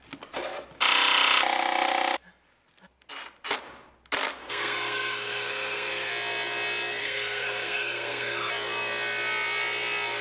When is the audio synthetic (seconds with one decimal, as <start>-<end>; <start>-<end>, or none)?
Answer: 4.4-6.1; 7.0-8.5